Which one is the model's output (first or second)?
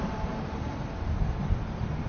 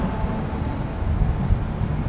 first